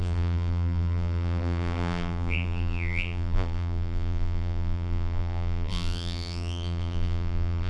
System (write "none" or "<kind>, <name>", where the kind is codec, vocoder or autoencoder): vocoder, BigVGAN v2